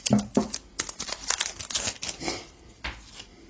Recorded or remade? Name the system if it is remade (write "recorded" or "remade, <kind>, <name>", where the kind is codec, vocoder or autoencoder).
recorded